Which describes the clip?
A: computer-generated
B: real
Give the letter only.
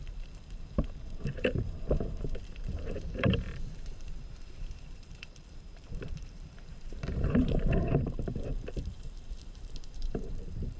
A